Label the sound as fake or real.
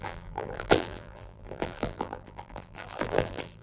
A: fake